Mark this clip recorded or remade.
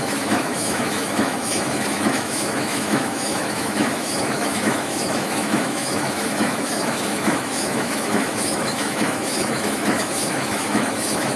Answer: remade